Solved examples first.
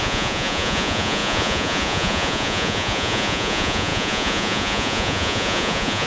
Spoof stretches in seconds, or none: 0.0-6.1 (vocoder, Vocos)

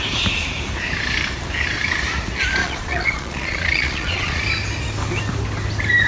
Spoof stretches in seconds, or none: 2.6-4.4 (vocoder, Vocos)

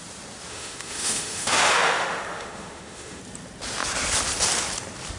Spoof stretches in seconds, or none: 0.5-3.2 (autoencoder, DAC-VAE)

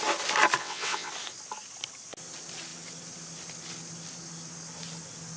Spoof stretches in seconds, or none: 0.6-1.1 (vocoder, WaveNeXt)

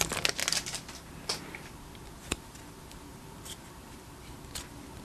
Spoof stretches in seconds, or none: 3.1-4.2 (vocoder, BigVGAN v2)

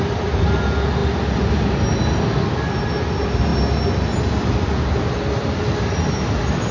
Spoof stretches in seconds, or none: none